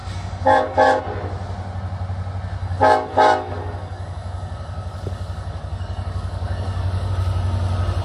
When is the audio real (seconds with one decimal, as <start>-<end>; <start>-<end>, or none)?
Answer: 1.0-2.6; 7.1-8.0